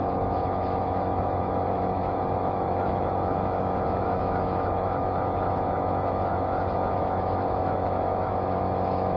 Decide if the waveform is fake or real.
fake